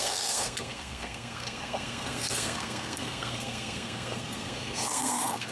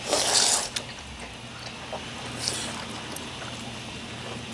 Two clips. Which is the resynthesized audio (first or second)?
first